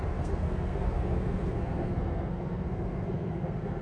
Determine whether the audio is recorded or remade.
remade